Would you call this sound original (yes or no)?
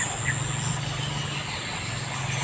yes